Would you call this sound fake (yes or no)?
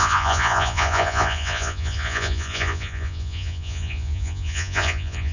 yes